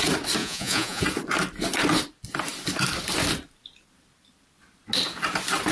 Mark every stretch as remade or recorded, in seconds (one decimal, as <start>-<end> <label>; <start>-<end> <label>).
0.0-0.4 recorded; 0.4-1.0 remade; 1.0-5.7 recorded